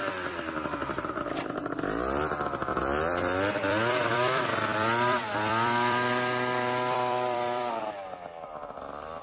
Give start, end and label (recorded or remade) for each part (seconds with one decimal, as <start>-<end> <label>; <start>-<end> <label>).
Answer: 0.0-1.2 remade; 1.2-2.7 recorded; 2.7-7.7 remade; 7.7-9.2 recorded